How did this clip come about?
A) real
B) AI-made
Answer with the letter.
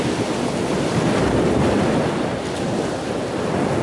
A